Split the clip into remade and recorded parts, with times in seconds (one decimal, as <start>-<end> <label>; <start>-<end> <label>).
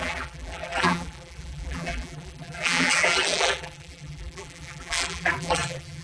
0.0-6.0 remade